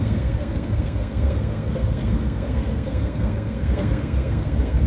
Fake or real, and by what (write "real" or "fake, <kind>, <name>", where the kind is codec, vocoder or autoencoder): fake, codec, SNAC